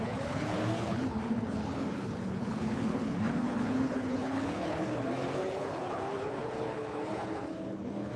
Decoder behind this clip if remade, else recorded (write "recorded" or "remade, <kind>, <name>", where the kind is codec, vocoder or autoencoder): remade, codec, HILCodec